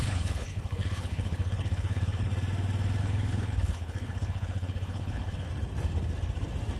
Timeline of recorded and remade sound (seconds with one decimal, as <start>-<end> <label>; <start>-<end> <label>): 0.0-2.3 remade; 2.3-3.0 recorded; 3.0-5.5 remade; 5.5-6.8 recorded